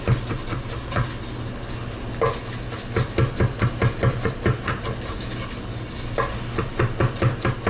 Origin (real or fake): real